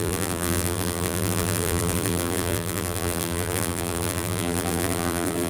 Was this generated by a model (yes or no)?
yes